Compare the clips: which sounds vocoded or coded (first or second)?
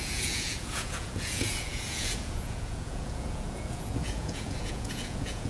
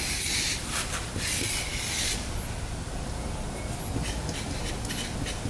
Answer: first